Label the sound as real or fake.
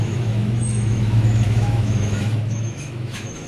fake